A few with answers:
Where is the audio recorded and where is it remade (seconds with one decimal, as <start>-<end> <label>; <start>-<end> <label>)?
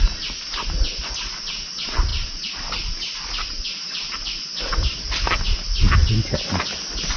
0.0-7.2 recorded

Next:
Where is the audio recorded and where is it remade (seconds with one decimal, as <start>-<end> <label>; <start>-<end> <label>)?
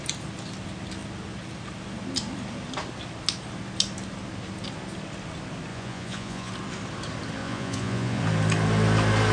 0.0-5.7 recorded; 5.7-6.5 remade; 6.5-7.4 recorded; 7.4-8.2 remade; 8.2-9.3 recorded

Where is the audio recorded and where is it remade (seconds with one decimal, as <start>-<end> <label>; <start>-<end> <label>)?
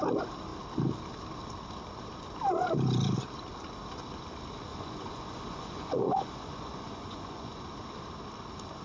0.0-4.7 recorded; 4.7-7.6 remade; 7.6-8.8 recorded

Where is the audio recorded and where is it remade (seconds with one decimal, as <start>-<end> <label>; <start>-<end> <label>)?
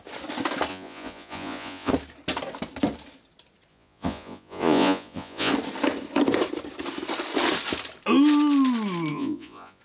0.0-0.7 recorded; 0.7-1.9 remade; 1.9-3.7 recorded; 3.7-5.5 remade; 5.5-9.1 recorded; 9.1-9.8 remade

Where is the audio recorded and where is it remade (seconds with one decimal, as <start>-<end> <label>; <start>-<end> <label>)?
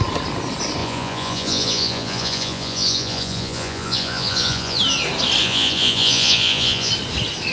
0.0-0.8 recorded; 0.8-4.8 remade; 4.8-5.4 recorded; 5.4-6.9 remade; 6.9-7.5 recorded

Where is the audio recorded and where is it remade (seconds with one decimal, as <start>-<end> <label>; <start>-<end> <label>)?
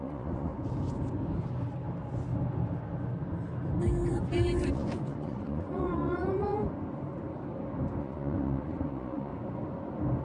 0.0-0.5 remade; 0.5-4.1 recorded; 4.1-6.6 remade; 6.6-8.0 recorded; 8.0-9.3 remade; 9.3-10.2 recorded